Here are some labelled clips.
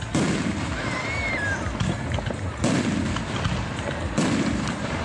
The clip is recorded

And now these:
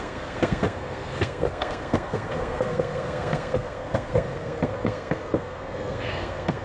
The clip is remade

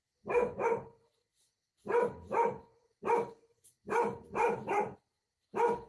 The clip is recorded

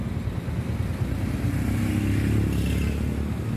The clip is recorded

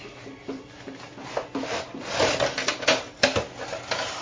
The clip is recorded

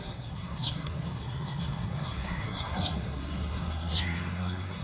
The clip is remade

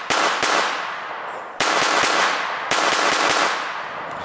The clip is recorded